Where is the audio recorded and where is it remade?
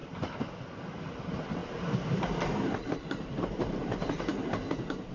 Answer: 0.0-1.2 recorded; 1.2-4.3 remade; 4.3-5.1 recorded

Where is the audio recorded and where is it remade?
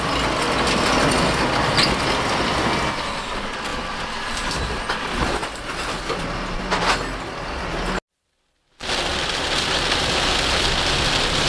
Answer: 0.0-3.7 recorded; 3.7-6.6 remade; 6.6-9.1 recorded; 9.1-10.7 remade; 10.7-11.5 recorded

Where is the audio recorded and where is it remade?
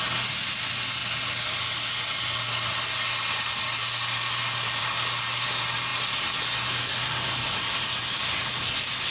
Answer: 0.0-9.1 recorded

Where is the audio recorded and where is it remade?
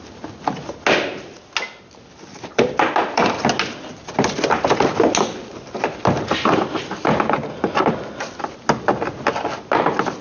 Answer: 0.0-2.3 recorded; 2.3-2.9 remade; 2.9-10.2 recorded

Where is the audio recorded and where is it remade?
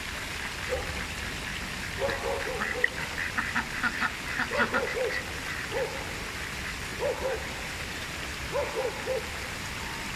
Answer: 0.0-6.9 recorded; 6.9-9.3 remade; 9.3-10.2 recorded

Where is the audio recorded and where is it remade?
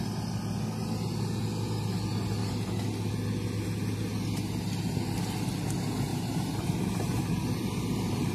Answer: 0.0-6.1 recorded; 6.1-8.3 remade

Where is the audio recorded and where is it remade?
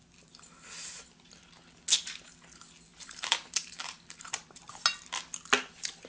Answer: 0.0-1.0 remade; 1.0-2.9 recorded; 2.9-4.7 remade; 4.7-6.1 recorded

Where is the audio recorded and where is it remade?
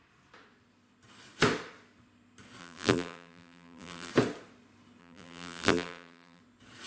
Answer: 0.0-2.6 recorded; 2.6-4.1 remade; 4.1-5.0 recorded; 5.0-6.4 remade; 6.4-6.9 recorded